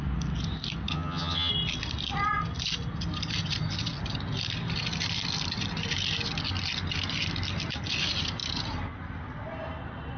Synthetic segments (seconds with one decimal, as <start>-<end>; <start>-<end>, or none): 0.9-1.5